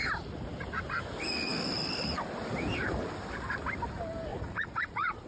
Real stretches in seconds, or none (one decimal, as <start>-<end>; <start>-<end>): 0.0-4.3